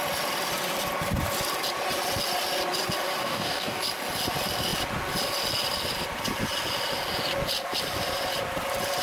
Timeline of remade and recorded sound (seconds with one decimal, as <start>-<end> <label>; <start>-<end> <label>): 0.0-3.2 recorded; 3.2-3.8 remade; 3.8-9.0 recorded